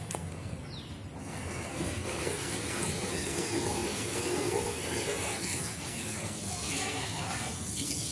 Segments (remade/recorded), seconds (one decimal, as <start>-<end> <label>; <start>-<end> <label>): 0.0-0.7 remade; 0.7-1.2 recorded; 1.2-8.1 remade